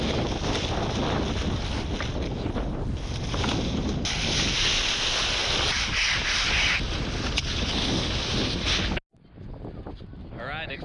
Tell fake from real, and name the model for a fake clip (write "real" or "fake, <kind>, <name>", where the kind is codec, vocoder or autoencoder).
real